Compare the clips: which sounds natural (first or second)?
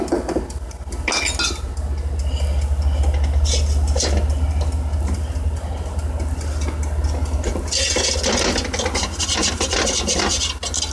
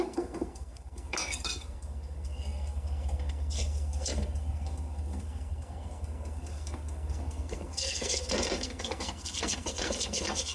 first